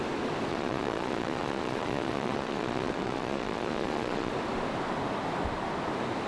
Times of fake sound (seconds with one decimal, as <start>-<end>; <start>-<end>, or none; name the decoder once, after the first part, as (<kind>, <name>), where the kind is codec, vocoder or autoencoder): 0.5-4.3 (vocoder, Vocos)

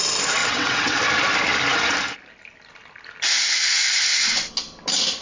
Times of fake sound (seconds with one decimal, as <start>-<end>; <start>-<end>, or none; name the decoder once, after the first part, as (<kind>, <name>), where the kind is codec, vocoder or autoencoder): 0.4-1.0 (vocoder, WaveNeXt)

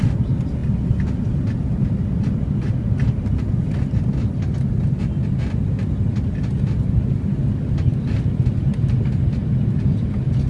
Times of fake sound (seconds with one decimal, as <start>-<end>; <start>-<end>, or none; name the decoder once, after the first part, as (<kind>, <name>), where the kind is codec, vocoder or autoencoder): none

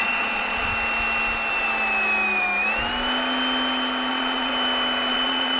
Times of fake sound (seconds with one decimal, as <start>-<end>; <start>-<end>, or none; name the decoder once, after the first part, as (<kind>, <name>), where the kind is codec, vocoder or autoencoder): 0.0-0.7 (vocoder, Vocos); 4.1-4.5; 5.1-5.6

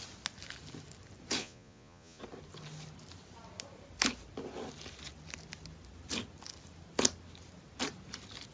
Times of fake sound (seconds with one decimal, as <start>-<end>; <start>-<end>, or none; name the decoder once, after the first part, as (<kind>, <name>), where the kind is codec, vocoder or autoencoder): 1.4-2.2 (vocoder, Vocos)